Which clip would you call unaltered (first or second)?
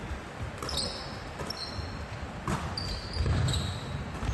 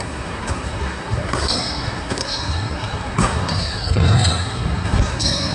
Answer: first